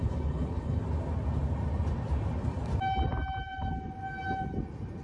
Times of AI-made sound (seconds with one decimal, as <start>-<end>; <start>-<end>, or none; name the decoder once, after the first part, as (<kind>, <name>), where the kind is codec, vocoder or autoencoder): 0.0-0.8 (codec, HILCodec)